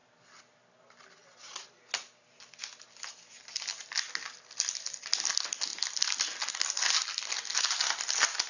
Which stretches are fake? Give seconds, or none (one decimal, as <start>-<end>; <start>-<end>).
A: none